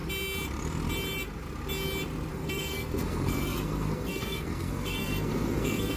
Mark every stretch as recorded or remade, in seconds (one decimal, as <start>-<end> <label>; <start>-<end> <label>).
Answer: 0.0-2.3 recorded; 2.3-6.0 remade